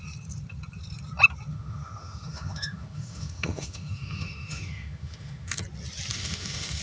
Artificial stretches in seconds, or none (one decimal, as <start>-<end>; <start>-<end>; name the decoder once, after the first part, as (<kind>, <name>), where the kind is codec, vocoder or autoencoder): 1.5-5.6 (autoencoder, DAC-VAE); 6.1-6.8